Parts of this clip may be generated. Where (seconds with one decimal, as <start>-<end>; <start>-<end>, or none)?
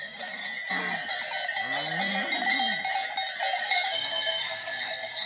0.0-0.4; 3.6-5.3